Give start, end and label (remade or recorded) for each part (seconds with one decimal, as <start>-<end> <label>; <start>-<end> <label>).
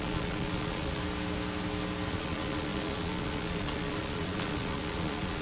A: 0.0-1.0 remade; 1.0-2.1 recorded; 2.1-5.4 remade